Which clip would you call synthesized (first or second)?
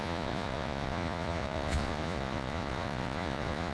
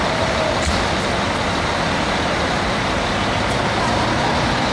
first